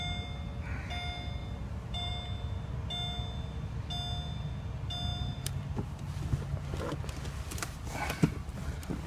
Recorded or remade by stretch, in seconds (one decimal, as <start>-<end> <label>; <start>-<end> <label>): 0.0-1.4 recorded; 1.4-2.1 remade; 2.1-5.1 recorded; 5.1-6.2 remade; 6.2-9.1 recorded